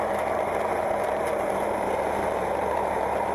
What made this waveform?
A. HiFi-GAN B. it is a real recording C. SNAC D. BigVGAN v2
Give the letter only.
D